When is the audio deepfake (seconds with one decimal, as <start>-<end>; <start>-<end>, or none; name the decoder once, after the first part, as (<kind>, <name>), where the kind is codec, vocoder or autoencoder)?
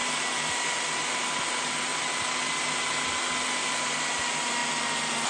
none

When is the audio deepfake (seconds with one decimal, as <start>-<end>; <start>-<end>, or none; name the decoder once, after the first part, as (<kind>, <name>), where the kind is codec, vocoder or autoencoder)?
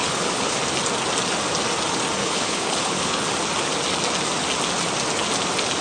0.0-0.6 (codec, HILCodec); 2.2-3.2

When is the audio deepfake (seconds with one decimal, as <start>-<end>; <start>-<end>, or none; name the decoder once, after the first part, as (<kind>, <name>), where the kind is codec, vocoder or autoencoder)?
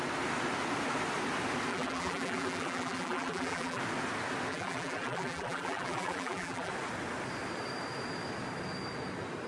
1.7-3.8 (vocoder, BigVGAN v2); 4.5-6.7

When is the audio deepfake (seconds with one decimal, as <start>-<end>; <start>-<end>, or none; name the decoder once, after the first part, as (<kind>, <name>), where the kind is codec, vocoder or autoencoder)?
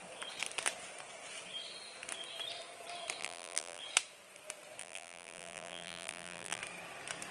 3.2-3.8 (vocoder, BigVGAN v2); 4.8-6.6